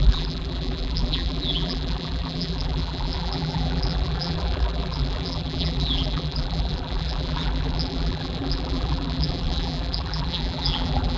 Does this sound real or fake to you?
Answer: fake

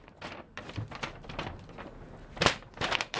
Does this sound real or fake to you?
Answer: fake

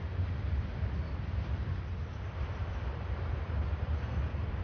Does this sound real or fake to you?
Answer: fake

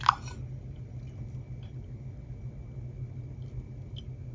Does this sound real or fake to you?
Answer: real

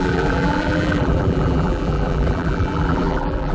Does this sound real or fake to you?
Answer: fake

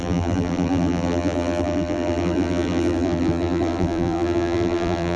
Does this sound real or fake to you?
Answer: fake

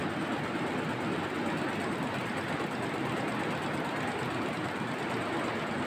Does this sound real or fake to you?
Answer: real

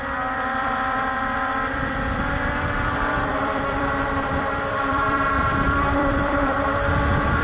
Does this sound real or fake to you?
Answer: fake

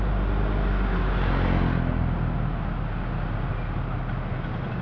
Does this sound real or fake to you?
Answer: real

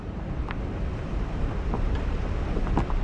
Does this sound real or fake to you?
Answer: real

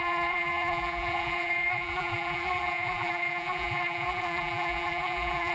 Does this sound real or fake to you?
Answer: fake